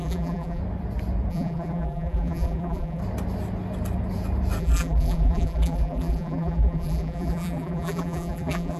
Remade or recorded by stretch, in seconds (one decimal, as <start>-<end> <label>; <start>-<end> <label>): 0.0-0.6 remade; 0.6-1.3 recorded; 1.3-3.0 remade; 3.0-4.6 recorded; 4.6-8.8 remade